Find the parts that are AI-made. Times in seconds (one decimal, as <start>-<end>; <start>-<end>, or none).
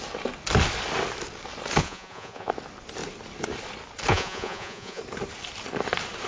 1.8-2.5; 4.1-5.0